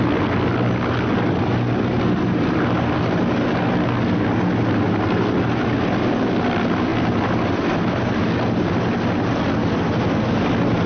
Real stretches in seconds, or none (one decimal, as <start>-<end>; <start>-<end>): 0.0-10.9